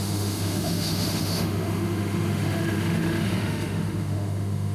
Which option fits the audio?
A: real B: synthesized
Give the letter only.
B